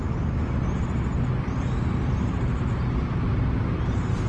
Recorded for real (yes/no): yes